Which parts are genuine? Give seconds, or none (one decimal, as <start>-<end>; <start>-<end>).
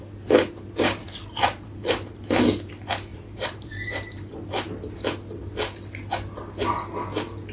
0.0-1.0; 2.1-3.1; 4.4-7.5